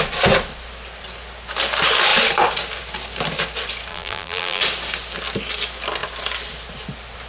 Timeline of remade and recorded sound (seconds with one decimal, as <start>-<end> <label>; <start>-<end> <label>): 0.0-3.9 recorded; 3.9-4.6 remade; 4.6-7.3 recorded